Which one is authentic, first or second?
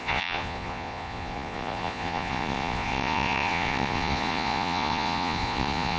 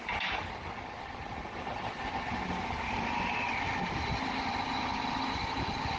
second